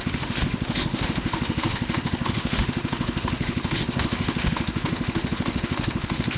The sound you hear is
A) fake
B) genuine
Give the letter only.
A